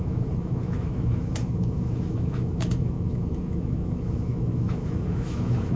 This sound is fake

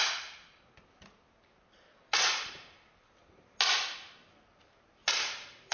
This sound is real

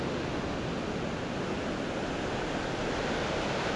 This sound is real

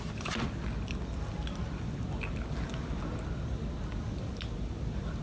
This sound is real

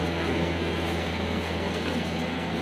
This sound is fake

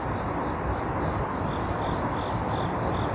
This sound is real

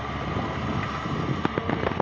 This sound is real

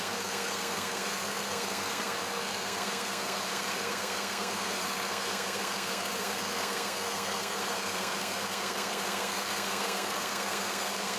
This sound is fake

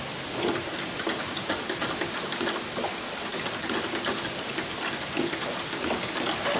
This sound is real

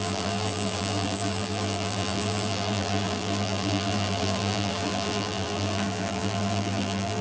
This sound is fake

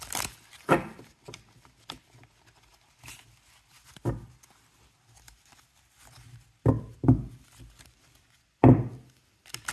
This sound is real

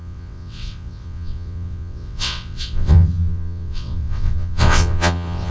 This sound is fake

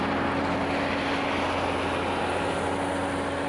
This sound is real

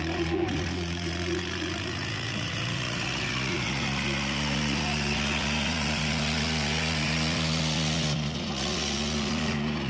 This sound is fake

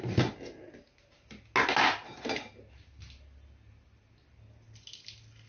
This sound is real